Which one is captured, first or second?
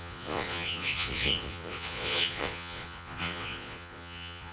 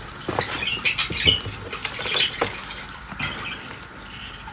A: second